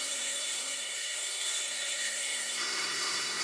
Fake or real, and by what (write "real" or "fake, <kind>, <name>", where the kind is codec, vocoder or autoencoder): fake, codec, SNAC